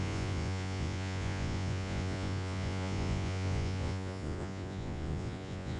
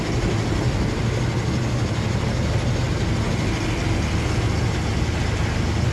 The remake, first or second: first